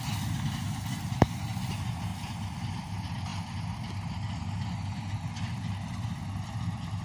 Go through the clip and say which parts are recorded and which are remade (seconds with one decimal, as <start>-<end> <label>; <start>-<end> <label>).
0.0-7.0 recorded